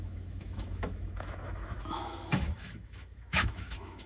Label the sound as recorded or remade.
remade